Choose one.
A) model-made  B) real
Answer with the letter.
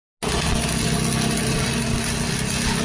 B